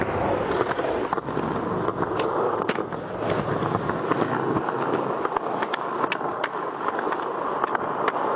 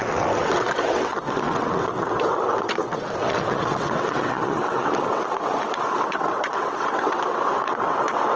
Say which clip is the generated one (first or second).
second